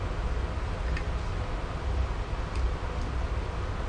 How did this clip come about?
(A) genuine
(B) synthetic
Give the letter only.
A